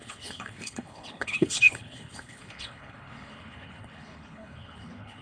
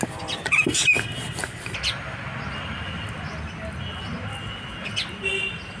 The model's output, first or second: first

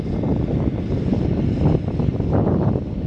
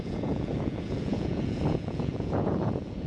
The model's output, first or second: second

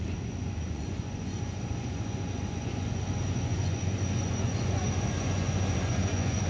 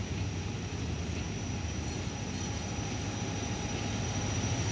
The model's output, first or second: first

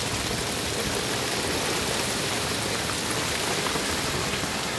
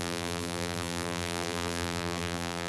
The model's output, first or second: second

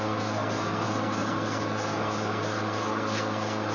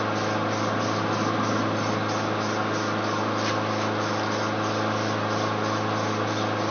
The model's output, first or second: first